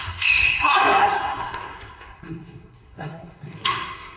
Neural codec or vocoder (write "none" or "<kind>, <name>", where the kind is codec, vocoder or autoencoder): codec, SNAC